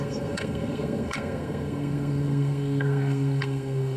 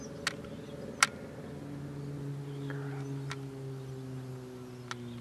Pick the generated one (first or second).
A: first